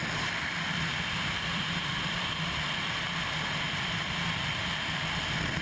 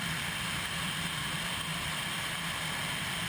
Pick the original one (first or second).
second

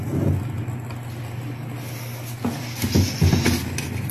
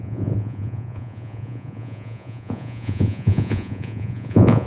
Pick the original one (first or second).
first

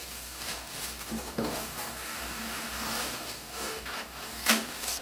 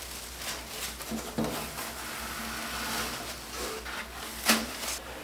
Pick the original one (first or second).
second